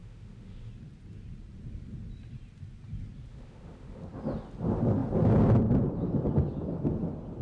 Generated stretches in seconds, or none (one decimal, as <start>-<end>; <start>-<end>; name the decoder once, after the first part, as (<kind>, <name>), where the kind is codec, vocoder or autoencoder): 0.0-0.7 (autoencoder, DAC-VAE); 3.3-4.0